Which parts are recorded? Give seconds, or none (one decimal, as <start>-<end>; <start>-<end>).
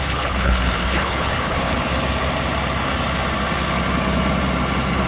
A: 1.7-5.1